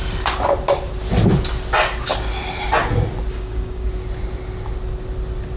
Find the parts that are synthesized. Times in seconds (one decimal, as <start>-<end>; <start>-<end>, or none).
3.3-4.0